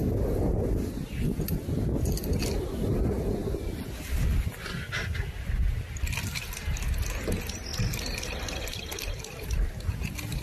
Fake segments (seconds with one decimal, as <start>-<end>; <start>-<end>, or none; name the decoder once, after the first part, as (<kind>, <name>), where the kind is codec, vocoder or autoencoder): none